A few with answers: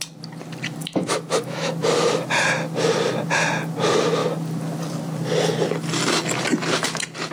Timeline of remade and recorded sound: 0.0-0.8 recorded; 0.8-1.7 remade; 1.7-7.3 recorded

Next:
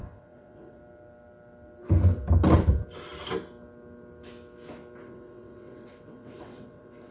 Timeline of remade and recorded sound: 0.0-0.8 remade; 0.8-5.0 recorded; 5.0-7.1 remade

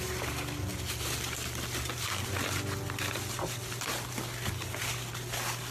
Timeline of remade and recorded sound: 0.0-5.7 recorded

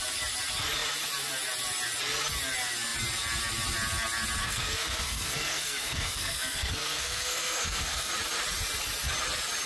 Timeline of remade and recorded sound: 0.0-4.4 recorded; 4.4-8.1 remade; 8.1-9.7 recorded

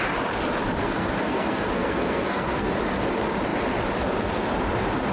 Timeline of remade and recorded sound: 0.0-0.8 recorded; 0.8-2.7 remade; 2.7-5.1 recorded

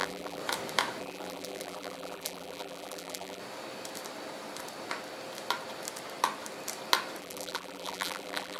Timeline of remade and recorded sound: 0.0-0.4 remade; 0.4-1.0 recorded; 1.0-3.4 remade; 3.4-7.2 recorded; 7.2-8.6 remade

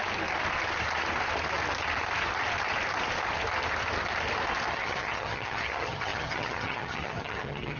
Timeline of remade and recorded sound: 0.0-4.7 recorded; 4.7-7.8 remade